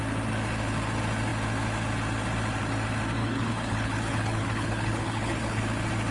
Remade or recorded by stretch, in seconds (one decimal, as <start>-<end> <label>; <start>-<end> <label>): 0.0-3.2 recorded; 3.2-5.6 remade; 5.6-6.1 recorded